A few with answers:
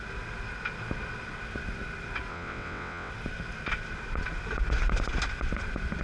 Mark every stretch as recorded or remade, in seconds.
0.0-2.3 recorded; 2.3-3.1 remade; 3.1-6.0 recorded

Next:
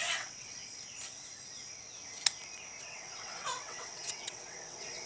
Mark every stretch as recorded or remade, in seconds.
0.0-0.6 remade; 0.6-2.8 recorded; 2.8-5.1 remade

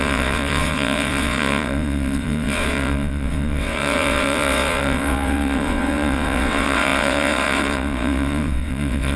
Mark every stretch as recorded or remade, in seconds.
0.0-9.2 remade

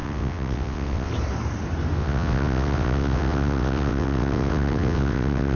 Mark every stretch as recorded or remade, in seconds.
0.0-1.1 remade; 1.1-2.0 recorded; 2.0-5.6 remade

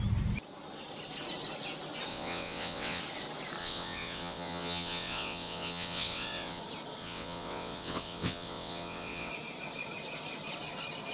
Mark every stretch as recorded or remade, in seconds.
0.0-2.1 recorded; 2.1-3.0 remade; 3.0-3.6 recorded; 3.6-6.6 remade; 6.6-7.0 recorded; 7.0-9.3 remade; 9.3-11.1 recorded

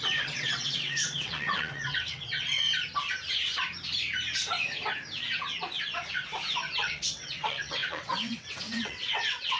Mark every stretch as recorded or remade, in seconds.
0.0-2.6 remade; 2.6-6.8 recorded; 6.8-9.6 remade

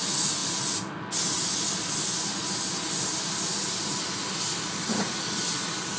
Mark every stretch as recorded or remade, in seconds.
0.0-6.0 recorded